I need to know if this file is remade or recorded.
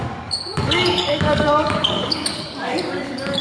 remade